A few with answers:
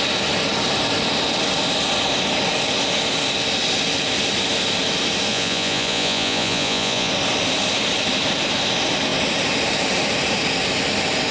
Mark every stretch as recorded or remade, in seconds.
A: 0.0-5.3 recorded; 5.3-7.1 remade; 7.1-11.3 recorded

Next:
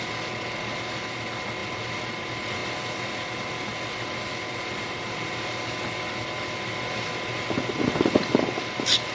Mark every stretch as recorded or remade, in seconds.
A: 0.0-9.1 recorded

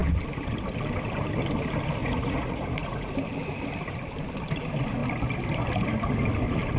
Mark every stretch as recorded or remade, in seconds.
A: 0.0-2.0 recorded; 2.0-3.1 remade; 3.1-6.8 recorded

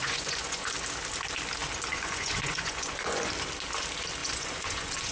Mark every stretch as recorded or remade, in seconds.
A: 0.0-0.7 remade; 0.7-1.9 recorded; 1.9-3.3 remade; 3.3-4.2 recorded; 4.2-5.1 remade

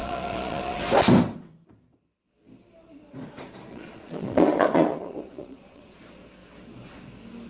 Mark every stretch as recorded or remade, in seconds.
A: 0.0-0.8 remade; 0.8-3.7 recorded; 3.7-6.0 remade; 6.0-7.5 recorded

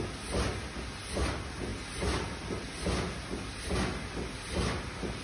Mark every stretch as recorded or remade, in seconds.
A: 0.0-5.2 recorded